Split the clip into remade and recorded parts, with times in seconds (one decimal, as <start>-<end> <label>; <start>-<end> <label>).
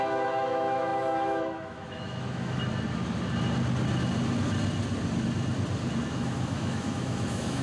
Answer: 0.0-2.6 remade; 2.6-6.1 recorded; 6.1-7.6 remade